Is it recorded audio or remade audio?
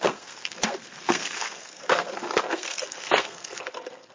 remade